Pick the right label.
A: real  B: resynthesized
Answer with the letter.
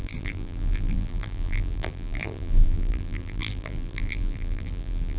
B